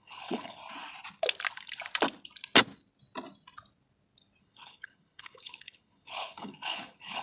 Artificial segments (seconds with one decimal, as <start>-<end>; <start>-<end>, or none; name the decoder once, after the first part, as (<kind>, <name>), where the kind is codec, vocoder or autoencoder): 0.0-0.6 (codec, HILCodec); 4.4-7.2